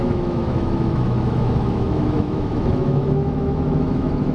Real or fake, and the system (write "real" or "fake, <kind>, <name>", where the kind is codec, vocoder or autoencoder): fake, autoencoder, DAC-VAE